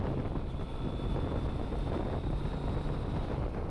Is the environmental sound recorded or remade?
recorded